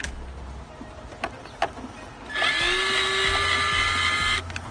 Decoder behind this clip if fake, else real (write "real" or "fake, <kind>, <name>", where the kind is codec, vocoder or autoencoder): real